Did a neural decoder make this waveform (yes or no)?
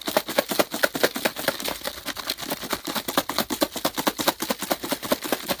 no